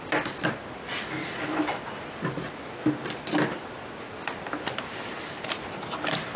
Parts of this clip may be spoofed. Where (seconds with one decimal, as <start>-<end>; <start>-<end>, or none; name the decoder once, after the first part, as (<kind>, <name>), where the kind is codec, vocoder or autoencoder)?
none